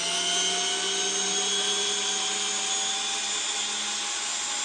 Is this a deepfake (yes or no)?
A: no